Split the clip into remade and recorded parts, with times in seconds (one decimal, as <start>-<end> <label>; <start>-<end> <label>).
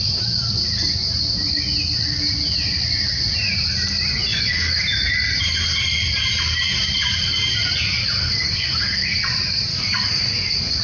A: 0.0-4.3 recorded; 4.3-4.8 remade; 4.8-8.2 recorded; 8.2-9.2 remade; 9.2-9.7 recorded; 9.7-10.8 remade